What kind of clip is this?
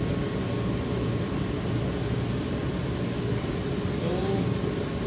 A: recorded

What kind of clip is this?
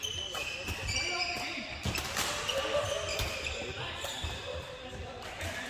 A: recorded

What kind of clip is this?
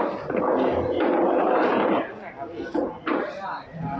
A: recorded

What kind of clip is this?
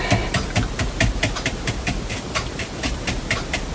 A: recorded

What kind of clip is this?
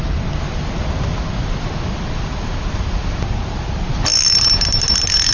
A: recorded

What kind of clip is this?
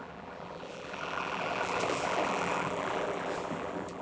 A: remade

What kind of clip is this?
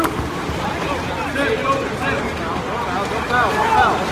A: recorded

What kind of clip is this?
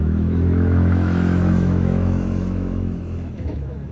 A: remade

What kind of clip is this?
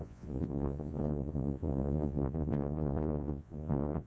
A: remade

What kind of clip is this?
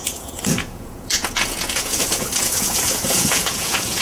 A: remade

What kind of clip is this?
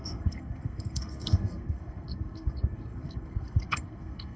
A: remade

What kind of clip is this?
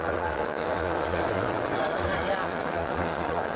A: remade